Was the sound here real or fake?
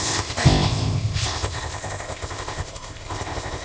fake